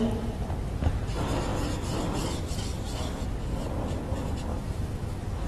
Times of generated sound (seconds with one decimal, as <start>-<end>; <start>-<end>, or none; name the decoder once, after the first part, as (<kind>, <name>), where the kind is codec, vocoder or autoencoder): 4.5-5.5 (autoencoder, DAC-VAE)